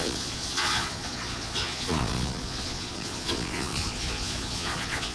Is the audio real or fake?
fake